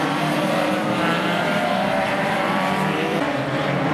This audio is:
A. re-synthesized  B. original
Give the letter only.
A